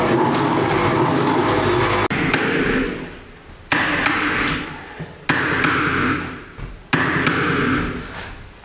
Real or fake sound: real